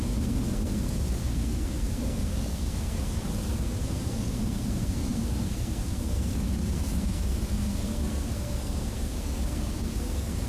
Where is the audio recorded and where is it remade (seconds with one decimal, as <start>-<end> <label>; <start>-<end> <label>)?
0.0-10.5 remade